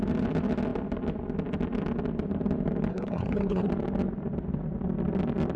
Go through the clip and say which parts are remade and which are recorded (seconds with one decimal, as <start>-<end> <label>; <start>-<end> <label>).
0.0-2.9 recorded; 2.9-3.7 remade; 3.7-5.6 recorded